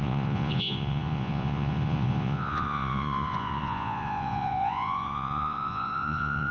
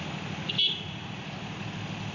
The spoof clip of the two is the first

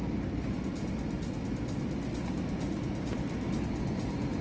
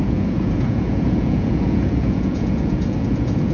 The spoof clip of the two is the second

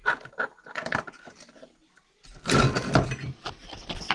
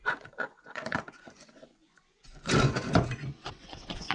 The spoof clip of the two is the second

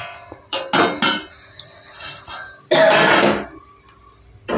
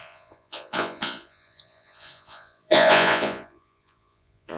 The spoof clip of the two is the second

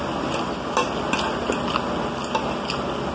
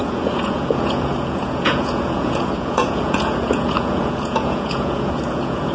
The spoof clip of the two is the second